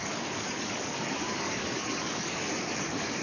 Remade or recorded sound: remade